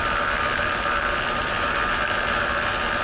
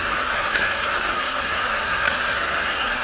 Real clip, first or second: first